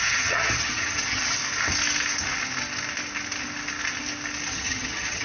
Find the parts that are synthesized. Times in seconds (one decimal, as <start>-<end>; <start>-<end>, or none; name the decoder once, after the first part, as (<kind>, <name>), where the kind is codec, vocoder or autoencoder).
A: 0.0-1.4 (vocoder, HiFi-GAN); 4.5-5.2